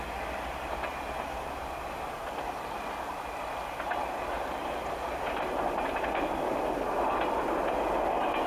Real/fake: real